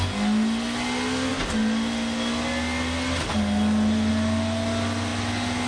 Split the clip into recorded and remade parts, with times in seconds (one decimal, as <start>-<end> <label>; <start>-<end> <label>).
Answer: 0.0-5.7 recorded